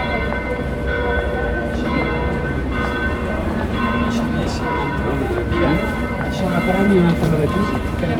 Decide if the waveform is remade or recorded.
remade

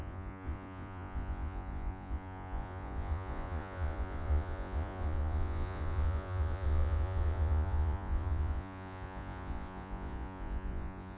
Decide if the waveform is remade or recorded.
remade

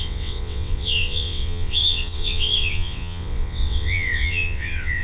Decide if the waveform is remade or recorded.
remade